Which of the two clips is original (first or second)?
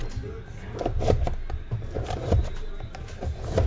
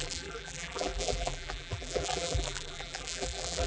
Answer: first